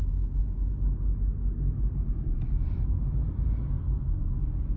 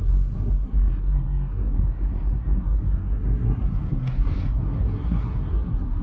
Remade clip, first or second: second